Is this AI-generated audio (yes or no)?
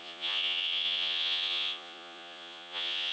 yes